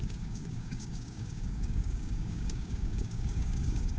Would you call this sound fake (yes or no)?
yes